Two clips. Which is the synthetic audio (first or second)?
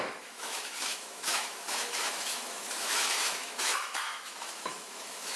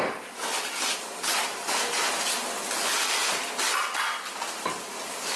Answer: first